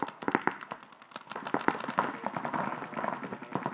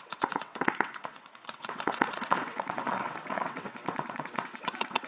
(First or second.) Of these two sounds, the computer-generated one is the second